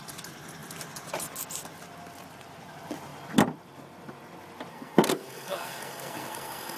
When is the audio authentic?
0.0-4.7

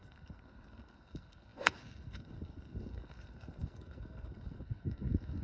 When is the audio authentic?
none

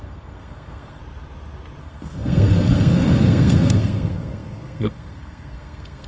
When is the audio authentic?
1.0-1.8

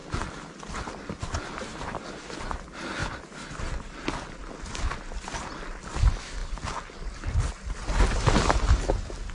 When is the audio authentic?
0.0-9.3